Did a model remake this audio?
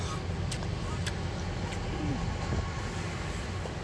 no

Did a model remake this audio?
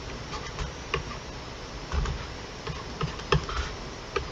no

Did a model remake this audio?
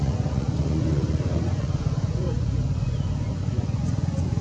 yes